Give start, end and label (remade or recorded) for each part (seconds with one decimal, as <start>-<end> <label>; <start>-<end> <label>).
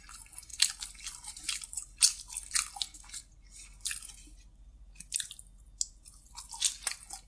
0.0-0.5 recorded; 0.5-2.7 remade; 2.7-7.3 recorded